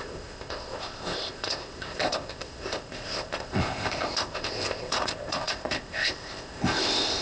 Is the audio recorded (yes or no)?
no